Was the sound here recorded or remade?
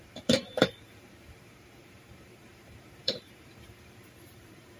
remade